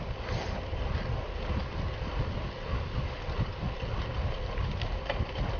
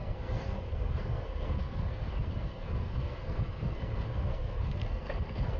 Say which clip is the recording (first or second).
first